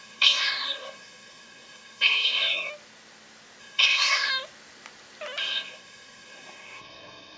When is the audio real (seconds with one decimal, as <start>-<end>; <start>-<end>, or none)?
2.7-3.6; 4.3-5.4